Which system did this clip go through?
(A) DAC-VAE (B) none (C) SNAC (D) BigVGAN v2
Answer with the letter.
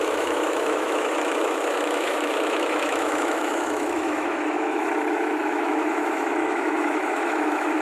A